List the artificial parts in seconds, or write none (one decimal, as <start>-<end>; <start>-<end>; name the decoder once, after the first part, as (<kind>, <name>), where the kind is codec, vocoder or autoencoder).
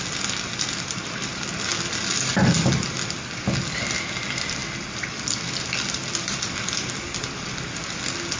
none